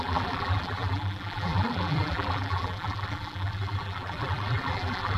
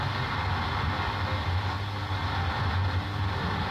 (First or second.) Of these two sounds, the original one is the second